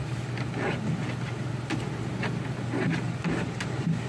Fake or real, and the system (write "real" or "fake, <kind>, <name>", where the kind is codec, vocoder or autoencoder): real